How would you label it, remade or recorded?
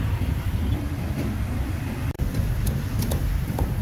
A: remade